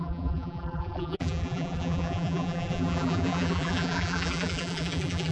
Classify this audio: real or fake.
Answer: fake